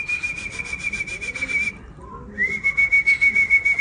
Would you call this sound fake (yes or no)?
yes